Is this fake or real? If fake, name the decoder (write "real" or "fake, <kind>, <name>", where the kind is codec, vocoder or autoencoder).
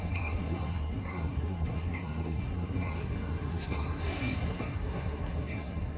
fake, codec, SNAC